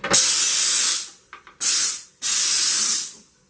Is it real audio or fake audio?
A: real